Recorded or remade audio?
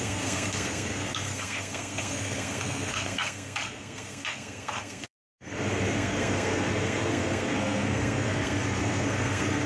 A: remade